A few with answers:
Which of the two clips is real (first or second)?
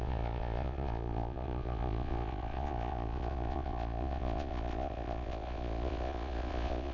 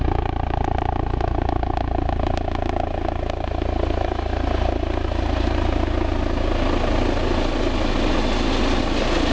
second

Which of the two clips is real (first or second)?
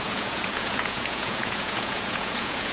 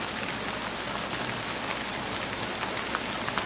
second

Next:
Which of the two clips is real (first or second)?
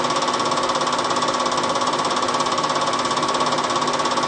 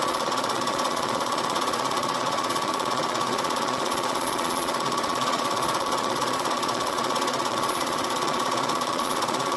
first